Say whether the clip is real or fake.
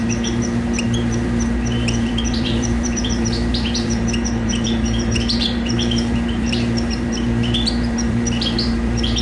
fake